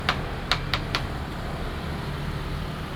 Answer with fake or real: real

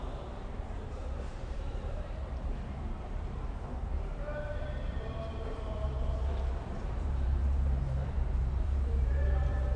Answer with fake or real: fake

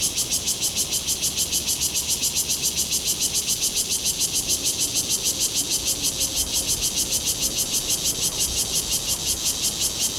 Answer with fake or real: real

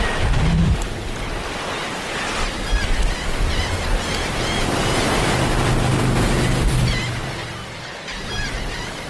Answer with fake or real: fake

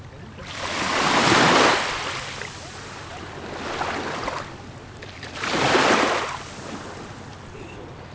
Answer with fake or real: real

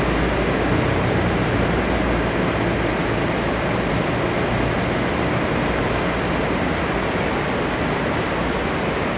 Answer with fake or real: real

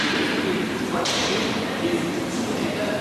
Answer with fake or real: fake